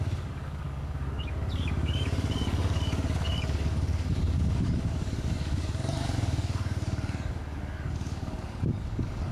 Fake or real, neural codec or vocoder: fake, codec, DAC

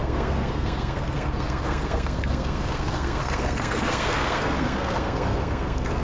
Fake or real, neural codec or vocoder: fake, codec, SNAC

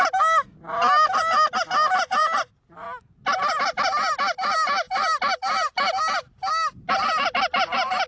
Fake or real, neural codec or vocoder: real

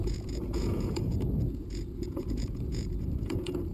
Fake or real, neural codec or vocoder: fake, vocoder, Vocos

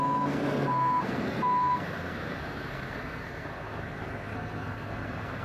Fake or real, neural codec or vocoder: fake, codec, SNAC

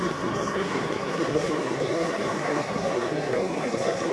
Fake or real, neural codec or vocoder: fake, codec, SNAC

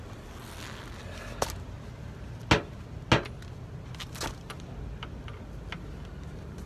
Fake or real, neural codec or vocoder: real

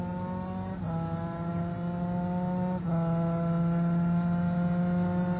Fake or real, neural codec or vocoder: real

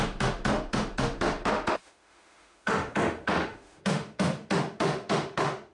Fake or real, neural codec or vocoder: fake, autoencoder, DAC-VAE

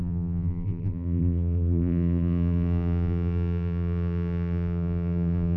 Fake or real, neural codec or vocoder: fake, vocoder, BigVGAN v2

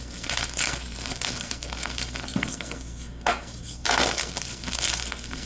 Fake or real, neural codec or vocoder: fake, codec, SNAC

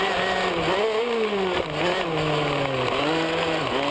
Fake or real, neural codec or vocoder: real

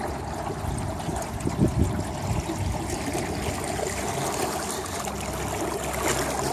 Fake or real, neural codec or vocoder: real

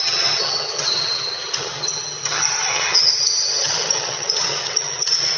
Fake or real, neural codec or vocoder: fake, vocoder, HiFi-GAN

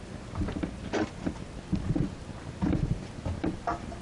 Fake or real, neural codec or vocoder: real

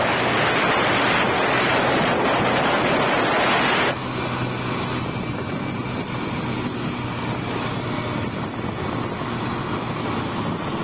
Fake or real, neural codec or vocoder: real